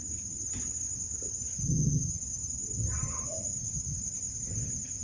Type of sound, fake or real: fake